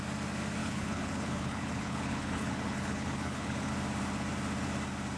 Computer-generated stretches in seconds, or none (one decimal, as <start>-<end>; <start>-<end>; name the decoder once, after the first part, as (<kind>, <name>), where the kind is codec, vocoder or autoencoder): 0.6-3.7 (codec, HILCodec)